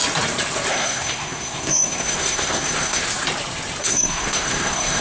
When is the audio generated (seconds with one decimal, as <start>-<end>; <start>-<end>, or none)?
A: 0.7-3.0; 3.8-5.0